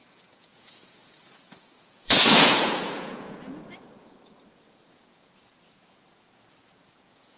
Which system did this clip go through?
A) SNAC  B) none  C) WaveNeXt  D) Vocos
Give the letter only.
D